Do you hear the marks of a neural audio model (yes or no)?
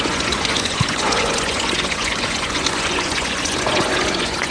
yes